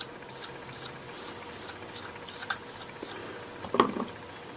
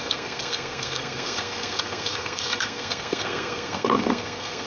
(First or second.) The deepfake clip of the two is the second